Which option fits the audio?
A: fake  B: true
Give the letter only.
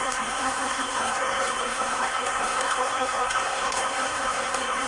A